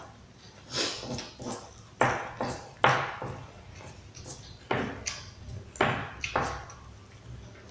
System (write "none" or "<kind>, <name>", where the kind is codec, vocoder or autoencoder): none